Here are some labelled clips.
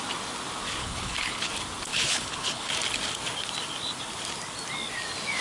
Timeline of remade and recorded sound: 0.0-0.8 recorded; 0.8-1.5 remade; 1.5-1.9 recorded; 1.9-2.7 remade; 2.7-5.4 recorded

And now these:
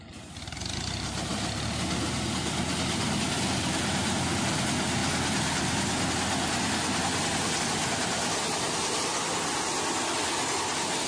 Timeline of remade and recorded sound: 0.0-11.1 recorded

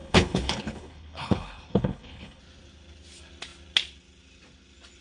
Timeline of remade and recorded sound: 0.0-2.4 remade; 2.4-5.0 recorded

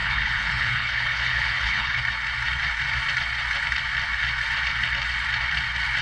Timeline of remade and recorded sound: 0.0-2.0 remade; 2.0-6.0 recorded

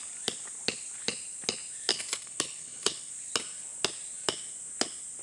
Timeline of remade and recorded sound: 0.0-1.9 recorded; 1.9-3.1 remade; 3.1-5.2 recorded

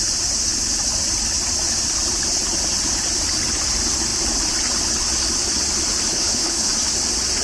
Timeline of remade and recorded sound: 0.0-6.1 recorded; 6.1-6.7 remade; 6.7-7.4 recorded

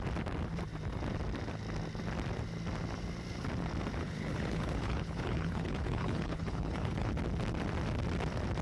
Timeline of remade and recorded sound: 0.0-4.0 recorded; 4.0-7.1 remade; 7.1-8.6 recorded